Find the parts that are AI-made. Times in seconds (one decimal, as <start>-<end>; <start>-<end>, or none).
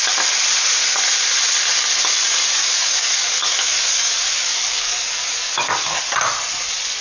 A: 2.6-6.0